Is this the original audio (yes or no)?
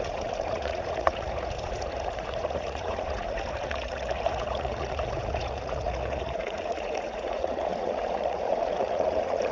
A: no